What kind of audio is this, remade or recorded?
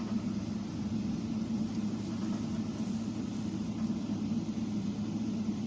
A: recorded